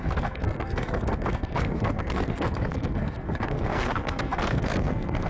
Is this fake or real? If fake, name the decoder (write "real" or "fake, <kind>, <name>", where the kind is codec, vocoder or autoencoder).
fake, codec, SNAC